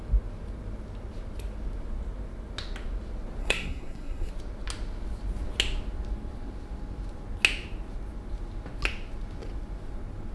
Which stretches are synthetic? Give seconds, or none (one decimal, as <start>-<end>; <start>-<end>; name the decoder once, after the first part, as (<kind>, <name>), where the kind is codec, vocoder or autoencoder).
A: 3.4-4.3 (codec, SNAC)